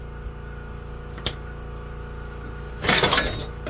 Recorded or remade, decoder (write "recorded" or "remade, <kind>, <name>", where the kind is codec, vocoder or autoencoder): recorded